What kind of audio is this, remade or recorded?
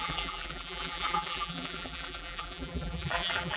remade